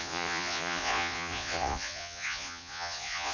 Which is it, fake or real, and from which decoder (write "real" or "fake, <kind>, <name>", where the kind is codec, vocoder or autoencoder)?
fake, vocoder, Vocos